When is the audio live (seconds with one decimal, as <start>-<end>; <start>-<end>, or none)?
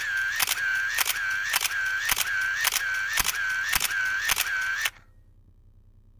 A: 0.0-6.2